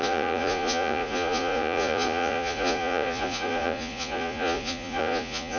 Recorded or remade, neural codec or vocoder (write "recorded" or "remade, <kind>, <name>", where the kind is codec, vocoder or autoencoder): remade, vocoder, Vocos